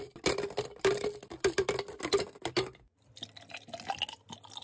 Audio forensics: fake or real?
real